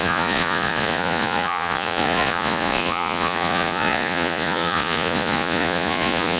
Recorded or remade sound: remade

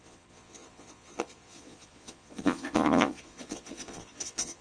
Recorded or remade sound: remade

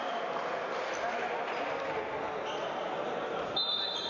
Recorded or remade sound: recorded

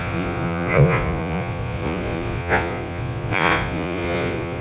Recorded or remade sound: remade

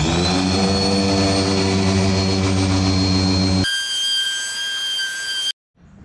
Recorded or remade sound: recorded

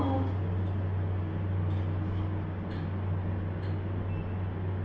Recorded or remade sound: recorded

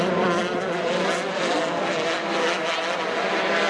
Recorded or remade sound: recorded